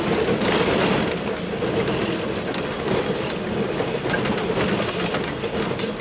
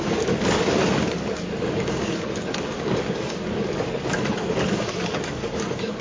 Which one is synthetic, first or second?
second